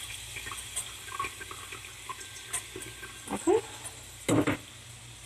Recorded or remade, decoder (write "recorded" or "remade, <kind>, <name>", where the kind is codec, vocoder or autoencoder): recorded